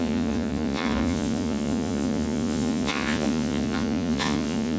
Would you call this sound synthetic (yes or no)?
yes